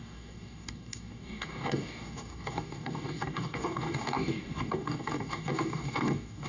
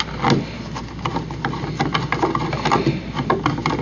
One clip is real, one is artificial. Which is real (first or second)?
second